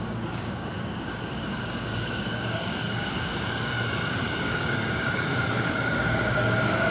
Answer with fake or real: fake